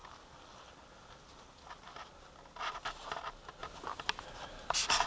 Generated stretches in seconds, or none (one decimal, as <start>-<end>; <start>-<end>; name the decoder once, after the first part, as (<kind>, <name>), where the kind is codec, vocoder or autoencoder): none